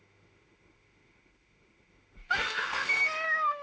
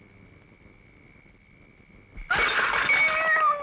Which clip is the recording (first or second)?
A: second